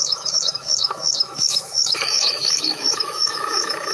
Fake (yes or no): yes